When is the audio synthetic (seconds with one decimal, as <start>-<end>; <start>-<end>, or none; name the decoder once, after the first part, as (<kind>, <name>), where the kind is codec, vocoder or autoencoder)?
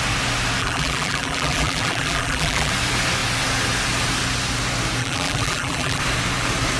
0.6-2.7 (vocoder, BigVGAN v2); 5.0-6.0